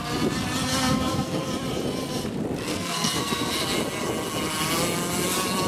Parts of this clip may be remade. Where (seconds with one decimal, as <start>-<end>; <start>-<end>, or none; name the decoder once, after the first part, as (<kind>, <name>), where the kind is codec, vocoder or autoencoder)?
0.7-1.5 (codec, SNAC); 2.7-3.5